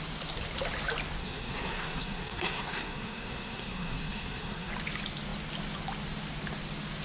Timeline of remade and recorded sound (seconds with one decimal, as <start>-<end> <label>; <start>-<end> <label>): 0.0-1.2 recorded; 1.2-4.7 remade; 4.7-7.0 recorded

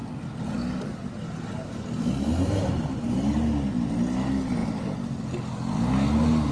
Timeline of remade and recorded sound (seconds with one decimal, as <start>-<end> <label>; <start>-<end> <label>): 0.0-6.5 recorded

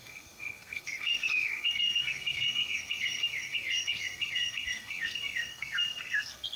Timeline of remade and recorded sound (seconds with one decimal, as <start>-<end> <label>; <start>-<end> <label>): 0.0-6.6 remade